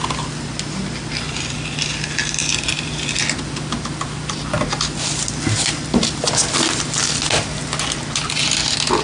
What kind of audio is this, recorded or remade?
recorded